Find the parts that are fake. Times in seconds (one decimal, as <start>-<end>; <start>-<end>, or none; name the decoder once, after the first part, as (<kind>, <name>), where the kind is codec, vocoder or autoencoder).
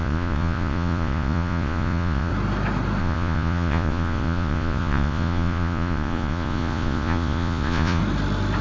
0.0-2.3 (vocoder, Vocos); 3.0-8.0